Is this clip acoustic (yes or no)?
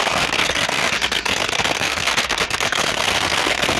no